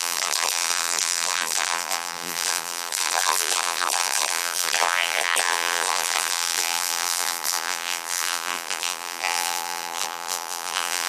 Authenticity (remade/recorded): remade